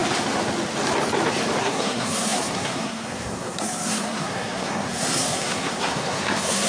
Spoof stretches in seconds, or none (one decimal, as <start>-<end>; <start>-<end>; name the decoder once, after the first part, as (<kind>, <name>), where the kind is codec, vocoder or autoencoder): 1.6-6.7 (codec, SNAC)